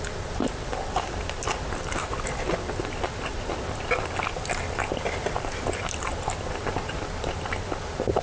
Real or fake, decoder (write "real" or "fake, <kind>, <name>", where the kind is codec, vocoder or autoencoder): real